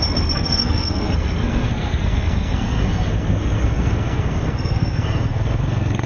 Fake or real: fake